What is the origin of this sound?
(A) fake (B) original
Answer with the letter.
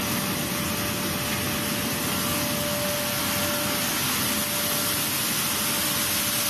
B